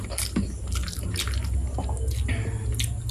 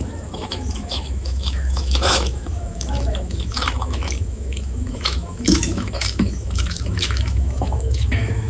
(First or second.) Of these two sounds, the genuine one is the first